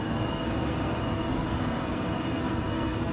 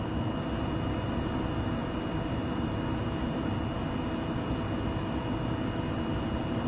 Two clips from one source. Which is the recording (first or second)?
second